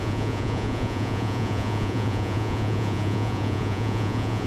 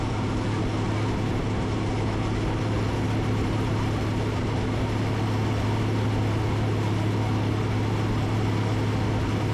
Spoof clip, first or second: first